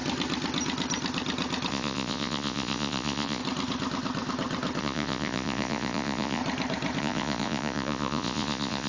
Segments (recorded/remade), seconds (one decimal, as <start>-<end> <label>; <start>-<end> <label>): 0.0-1.7 recorded; 1.7-3.4 remade; 3.4-4.8 recorded; 4.8-6.4 remade; 6.4-7.0 recorded; 7.0-8.9 remade